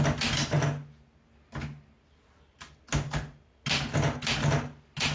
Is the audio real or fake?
real